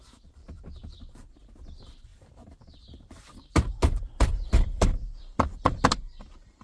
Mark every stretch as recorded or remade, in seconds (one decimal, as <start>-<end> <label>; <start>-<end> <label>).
0.0-0.4 recorded; 0.4-1.5 remade; 1.5-2.1 recorded; 2.1-5.9 remade; 5.9-6.6 recorded